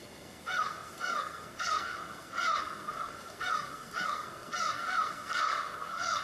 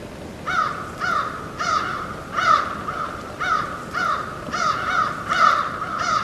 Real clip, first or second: second